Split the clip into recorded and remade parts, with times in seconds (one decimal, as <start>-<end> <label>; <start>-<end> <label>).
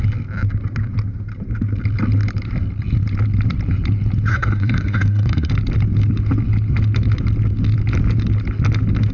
0.0-4.3 recorded; 4.3-5.5 remade; 5.5-9.1 recorded